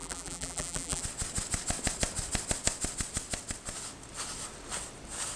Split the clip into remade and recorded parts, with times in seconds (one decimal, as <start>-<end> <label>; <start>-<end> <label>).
0.0-1.0 remade; 1.0-5.4 recorded